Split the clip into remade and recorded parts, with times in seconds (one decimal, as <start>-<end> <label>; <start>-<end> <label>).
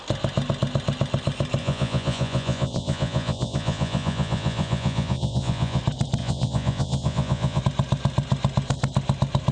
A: 0.0-1.6 recorded; 1.6-5.8 remade; 5.8-6.2 recorded; 6.2-7.6 remade; 7.6-9.5 recorded